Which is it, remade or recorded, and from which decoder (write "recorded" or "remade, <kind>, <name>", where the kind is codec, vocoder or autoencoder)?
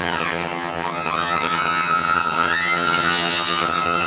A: remade, vocoder, HiFi-GAN